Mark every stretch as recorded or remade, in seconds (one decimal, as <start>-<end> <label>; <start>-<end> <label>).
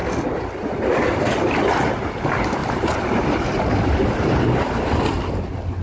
0.0-5.8 recorded